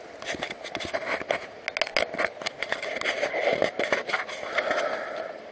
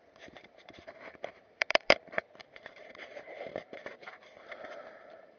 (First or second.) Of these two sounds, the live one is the first